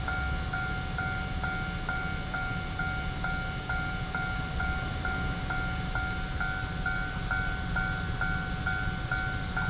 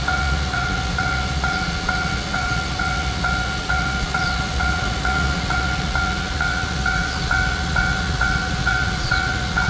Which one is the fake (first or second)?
second